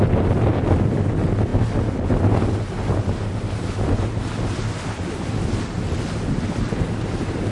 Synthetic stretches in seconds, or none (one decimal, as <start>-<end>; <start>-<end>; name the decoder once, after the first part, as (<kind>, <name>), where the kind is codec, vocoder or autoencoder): none